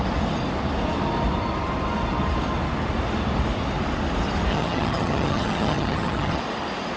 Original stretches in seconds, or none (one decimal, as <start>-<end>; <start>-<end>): 0.0-4.5; 6.4-7.0